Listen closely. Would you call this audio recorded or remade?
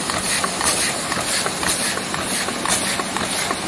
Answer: recorded